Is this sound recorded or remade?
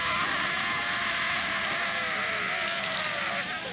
recorded